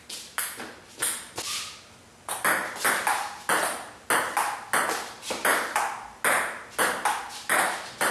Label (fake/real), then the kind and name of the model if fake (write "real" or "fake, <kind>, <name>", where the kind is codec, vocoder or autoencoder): real